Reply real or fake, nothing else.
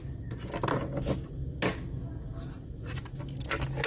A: real